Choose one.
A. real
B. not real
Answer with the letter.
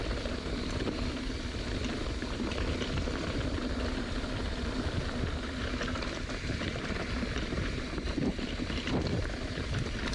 B